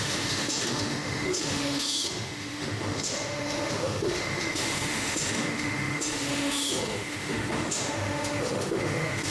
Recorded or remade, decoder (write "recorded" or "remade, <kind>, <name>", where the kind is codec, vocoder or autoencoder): remade, autoencoder, DAC-VAE